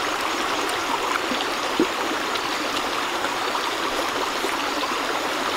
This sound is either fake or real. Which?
real